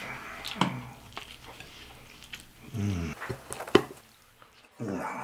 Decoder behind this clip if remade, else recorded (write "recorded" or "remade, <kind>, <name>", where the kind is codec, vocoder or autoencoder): recorded